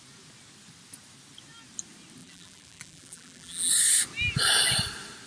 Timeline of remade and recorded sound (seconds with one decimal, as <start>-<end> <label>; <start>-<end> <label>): 0.0-2.2 recorded; 2.2-3.7 remade; 3.7-5.3 recorded